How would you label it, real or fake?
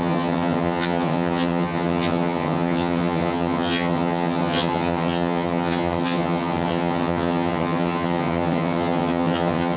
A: fake